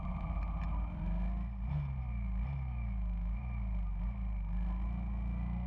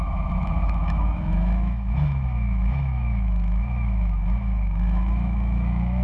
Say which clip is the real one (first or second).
first